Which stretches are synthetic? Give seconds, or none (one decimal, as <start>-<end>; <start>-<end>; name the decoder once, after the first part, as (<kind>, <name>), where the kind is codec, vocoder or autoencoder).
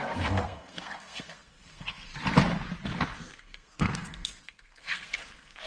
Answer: 0.0-2.1 (codec, SNAC); 3.2-5.7